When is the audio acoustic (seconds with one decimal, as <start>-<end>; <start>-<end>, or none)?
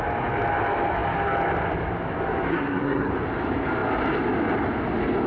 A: 0.0-2.5; 3.1-5.3